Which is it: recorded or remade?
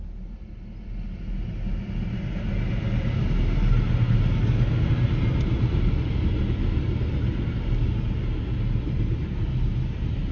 recorded